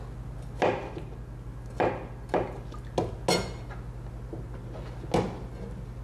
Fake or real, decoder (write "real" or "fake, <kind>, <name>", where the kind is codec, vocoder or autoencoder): real